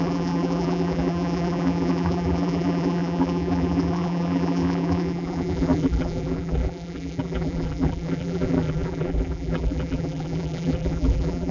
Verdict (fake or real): fake